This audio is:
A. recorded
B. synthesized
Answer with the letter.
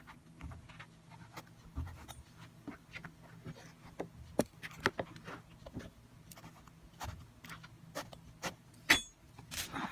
A